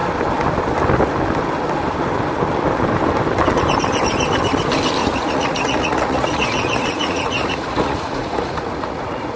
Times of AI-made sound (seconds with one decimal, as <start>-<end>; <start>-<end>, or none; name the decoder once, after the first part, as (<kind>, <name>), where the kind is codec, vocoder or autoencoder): 5.0-9.4 (vocoder, Vocos)